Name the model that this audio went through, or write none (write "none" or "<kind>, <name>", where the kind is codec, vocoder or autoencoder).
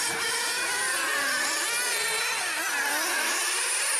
none